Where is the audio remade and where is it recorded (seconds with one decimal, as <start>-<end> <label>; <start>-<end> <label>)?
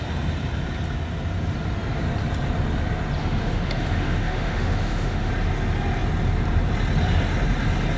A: 0.0-3.2 recorded; 3.2-5.3 remade; 5.3-8.0 recorded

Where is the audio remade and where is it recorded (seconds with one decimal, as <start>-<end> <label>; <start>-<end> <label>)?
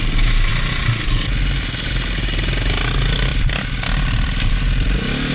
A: 0.0-3.3 recorded; 3.3-5.3 remade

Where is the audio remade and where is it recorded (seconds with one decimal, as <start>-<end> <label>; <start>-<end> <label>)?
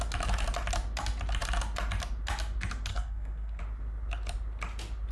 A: 0.0-2.9 recorded; 2.9-3.6 remade; 3.6-5.1 recorded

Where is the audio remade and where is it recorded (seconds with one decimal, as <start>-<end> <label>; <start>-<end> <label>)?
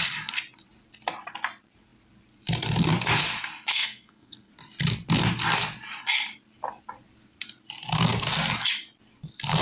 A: 0.0-3.7 recorded; 3.7-4.5 remade; 4.5-9.6 recorded